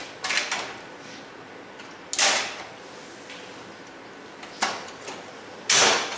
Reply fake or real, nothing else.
real